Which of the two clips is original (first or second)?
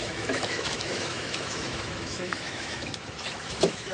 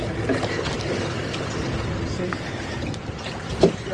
second